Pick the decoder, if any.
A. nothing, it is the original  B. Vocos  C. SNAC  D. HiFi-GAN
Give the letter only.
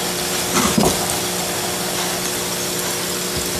A